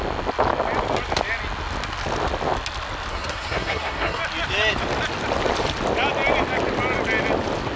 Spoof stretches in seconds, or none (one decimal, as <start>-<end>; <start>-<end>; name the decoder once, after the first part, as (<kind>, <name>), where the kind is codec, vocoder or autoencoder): 3.1-4.2 (codec, SNAC)

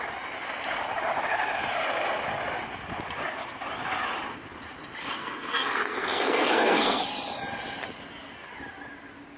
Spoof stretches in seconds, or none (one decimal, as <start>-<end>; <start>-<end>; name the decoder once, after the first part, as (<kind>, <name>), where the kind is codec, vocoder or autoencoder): 5.0-7.0 (codec, SNAC)

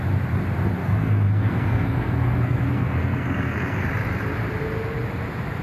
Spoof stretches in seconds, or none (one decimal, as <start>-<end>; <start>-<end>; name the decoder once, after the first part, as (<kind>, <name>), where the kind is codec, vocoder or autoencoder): 0.8-3.9 (codec, SNAC)

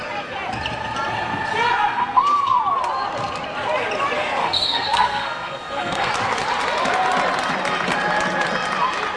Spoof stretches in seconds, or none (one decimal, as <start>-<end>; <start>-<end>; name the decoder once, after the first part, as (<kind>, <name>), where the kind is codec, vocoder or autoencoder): 1.9-2.6 (codec, SNAC); 4.4-6.1